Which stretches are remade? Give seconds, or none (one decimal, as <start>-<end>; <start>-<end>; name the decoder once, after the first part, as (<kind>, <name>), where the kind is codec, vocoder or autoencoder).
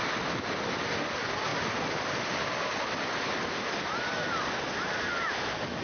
none